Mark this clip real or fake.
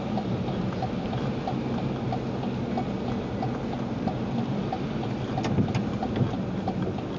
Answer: real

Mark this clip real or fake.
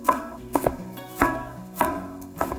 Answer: fake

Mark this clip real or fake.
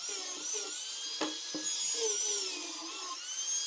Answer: real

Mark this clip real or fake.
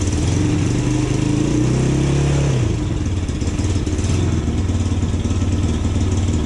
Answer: real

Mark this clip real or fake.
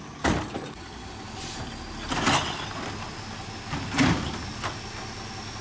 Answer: real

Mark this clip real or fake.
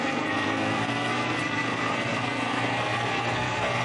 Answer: fake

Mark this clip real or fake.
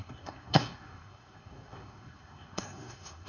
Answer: fake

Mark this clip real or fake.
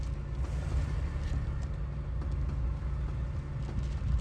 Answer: real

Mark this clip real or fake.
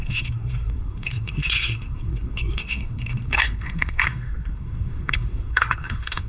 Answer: fake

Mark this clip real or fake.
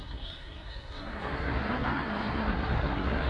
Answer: fake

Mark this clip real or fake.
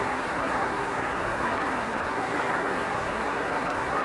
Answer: fake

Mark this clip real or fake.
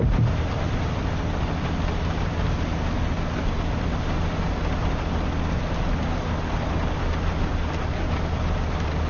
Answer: real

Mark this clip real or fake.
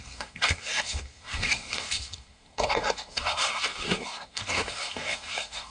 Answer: fake